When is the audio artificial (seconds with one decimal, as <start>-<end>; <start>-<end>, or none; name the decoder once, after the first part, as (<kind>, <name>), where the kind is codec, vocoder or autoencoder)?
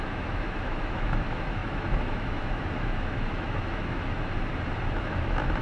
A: 0.0-4.3 (autoencoder, DAC-VAE); 5.0-5.6